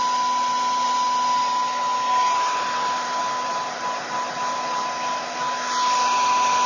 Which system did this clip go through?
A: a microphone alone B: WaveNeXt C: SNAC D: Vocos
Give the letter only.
A